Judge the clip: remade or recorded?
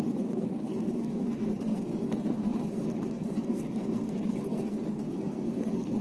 remade